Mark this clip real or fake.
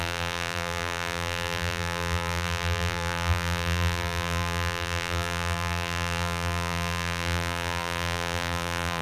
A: fake